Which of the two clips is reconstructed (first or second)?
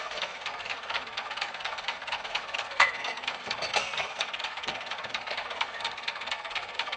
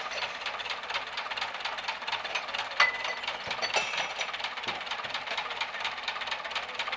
first